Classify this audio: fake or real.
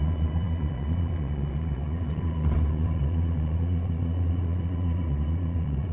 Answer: fake